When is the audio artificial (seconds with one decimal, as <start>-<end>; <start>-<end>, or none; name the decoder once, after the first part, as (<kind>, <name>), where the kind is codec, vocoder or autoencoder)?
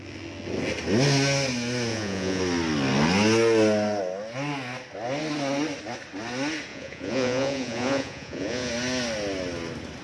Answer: 1.9-2.4 (vocoder, Vocos); 6.7-8.7